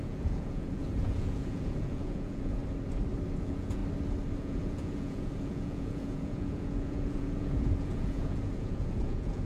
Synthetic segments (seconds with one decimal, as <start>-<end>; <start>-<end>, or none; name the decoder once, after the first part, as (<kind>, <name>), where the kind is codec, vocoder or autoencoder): 0.0-2.6 (vocoder, Vocos); 3.4-3.8; 4.4-9.5